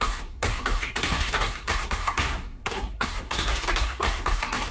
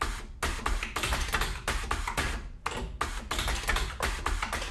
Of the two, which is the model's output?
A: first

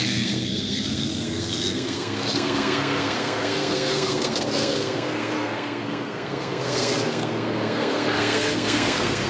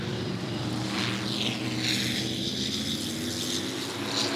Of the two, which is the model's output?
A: first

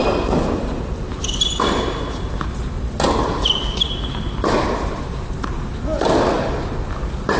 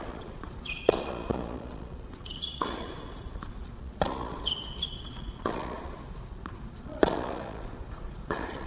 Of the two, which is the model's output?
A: second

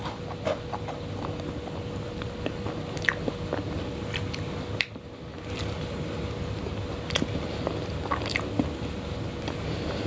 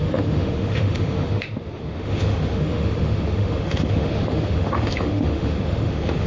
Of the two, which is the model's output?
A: second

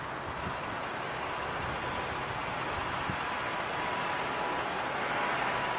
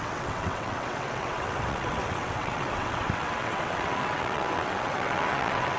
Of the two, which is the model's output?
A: second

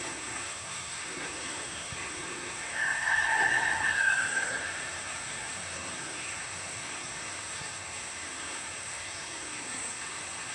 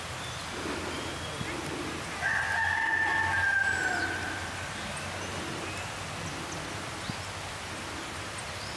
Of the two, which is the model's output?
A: first